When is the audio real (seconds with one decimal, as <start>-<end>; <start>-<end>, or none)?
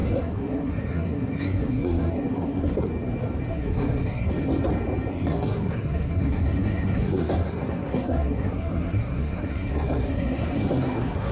2.9-3.5; 4.3-5.1